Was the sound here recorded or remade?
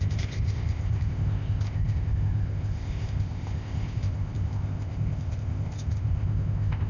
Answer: remade